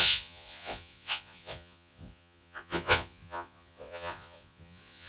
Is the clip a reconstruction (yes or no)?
yes